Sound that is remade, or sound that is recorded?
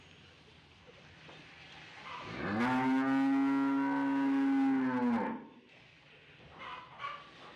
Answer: recorded